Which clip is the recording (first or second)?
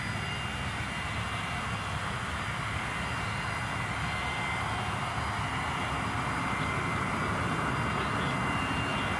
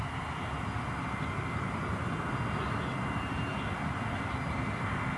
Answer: first